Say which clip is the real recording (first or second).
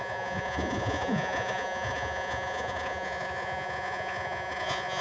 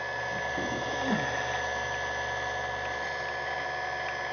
second